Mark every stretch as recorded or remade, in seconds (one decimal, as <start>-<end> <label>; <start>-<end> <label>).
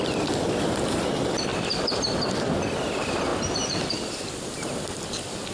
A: 0.0-5.5 recorded